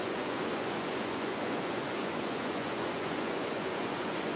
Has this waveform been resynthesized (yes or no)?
yes